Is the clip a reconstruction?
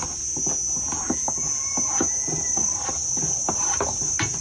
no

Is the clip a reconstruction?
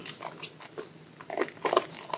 no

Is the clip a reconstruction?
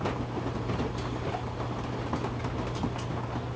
no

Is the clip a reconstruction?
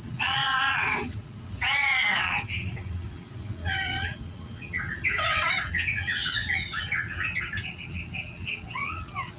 yes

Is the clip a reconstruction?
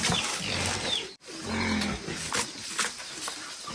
no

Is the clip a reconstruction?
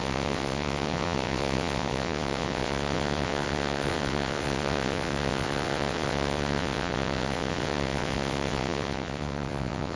yes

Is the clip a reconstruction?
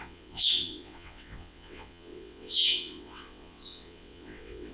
yes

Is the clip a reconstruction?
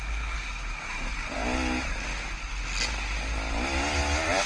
no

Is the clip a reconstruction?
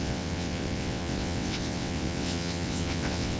yes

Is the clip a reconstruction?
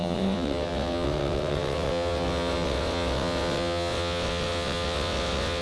yes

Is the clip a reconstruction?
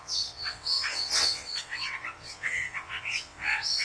yes